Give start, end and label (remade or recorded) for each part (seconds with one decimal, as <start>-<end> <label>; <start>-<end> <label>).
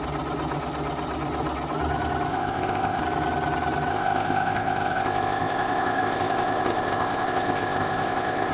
0.0-2.3 recorded; 2.3-3.0 remade; 3.0-3.9 recorded; 3.9-8.5 remade